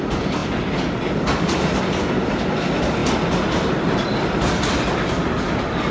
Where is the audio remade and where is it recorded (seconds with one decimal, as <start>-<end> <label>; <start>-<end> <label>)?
0.0-5.9 recorded